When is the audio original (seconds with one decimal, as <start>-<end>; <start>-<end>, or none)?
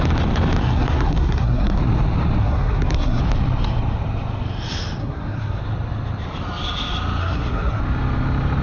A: 0.0-0.6; 1.8-2.4; 3.2-5.0; 5.6-7.2; 7.8-8.6